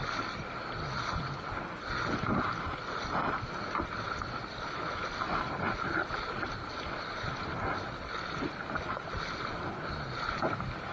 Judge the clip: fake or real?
real